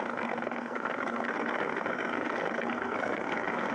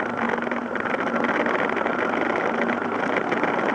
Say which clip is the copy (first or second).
first